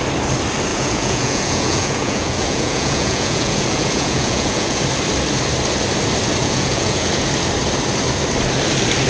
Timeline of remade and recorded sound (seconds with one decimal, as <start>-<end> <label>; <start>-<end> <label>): 0.0-0.7 recorded; 0.7-4.8 remade; 4.8-6.4 recorded; 6.4-7.1 remade; 7.1-9.1 recorded